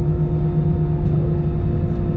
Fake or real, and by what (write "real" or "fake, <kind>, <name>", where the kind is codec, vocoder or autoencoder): real